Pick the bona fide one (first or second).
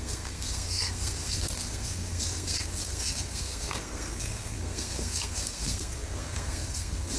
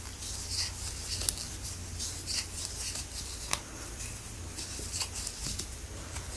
second